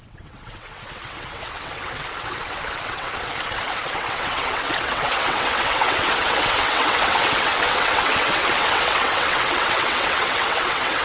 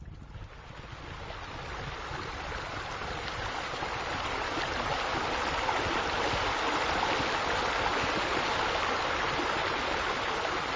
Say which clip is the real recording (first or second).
second